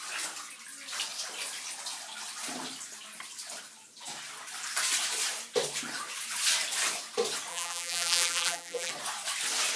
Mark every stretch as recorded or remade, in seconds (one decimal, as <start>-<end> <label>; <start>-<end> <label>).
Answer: 0.0-7.5 recorded; 7.5-8.9 remade; 8.9-9.8 recorded